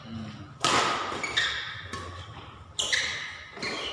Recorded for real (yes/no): yes